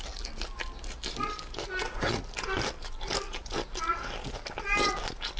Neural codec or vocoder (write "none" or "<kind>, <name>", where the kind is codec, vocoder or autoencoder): none